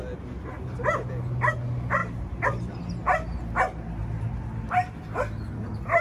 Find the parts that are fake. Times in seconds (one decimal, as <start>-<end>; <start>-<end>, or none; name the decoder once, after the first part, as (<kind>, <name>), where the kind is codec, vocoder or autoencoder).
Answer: 2.0-2.7 (vocoder, BigVGAN v2)